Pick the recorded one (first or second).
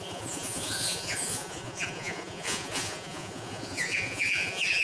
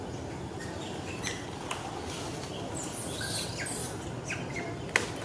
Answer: second